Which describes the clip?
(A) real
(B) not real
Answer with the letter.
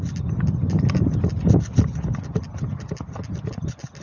A